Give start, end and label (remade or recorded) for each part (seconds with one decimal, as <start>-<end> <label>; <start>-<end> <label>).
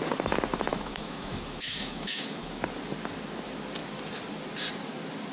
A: 0.0-0.7 recorded; 0.7-2.6 remade; 2.6-5.3 recorded